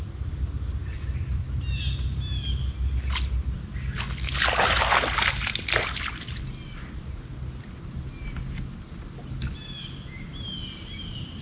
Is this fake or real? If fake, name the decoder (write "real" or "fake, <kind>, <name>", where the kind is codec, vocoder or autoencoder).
real